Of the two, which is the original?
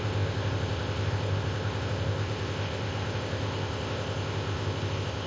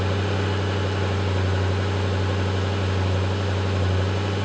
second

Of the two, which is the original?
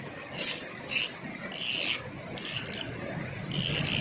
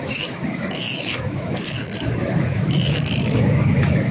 first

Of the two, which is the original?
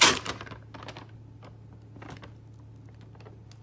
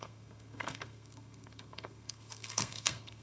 first